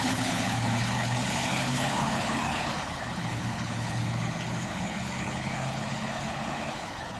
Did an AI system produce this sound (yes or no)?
yes